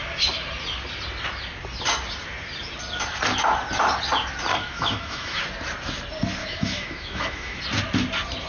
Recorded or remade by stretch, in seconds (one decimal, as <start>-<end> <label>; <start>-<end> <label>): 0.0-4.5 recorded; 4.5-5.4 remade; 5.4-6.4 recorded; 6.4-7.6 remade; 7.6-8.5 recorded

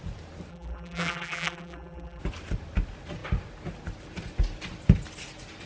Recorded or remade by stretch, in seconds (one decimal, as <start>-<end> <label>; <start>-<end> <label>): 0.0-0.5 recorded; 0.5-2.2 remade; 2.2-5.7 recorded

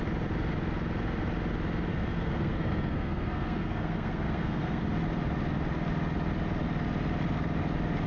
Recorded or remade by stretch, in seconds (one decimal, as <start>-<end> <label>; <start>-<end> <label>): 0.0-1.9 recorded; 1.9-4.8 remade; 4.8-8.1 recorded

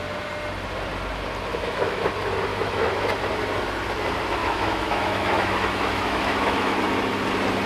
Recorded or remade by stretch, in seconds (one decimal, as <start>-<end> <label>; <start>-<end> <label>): 0.0-1.5 recorded; 1.5-2.1 remade; 2.1-2.5 recorded; 2.5-3.1 remade; 3.1-4.4 recorded; 4.4-6.8 remade; 6.8-7.7 recorded